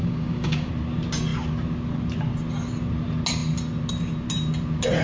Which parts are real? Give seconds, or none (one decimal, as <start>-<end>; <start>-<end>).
0.7-5.0